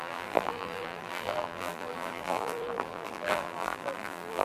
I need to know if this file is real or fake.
fake